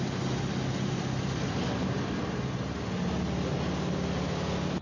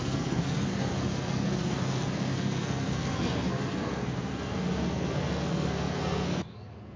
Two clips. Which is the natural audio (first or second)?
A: first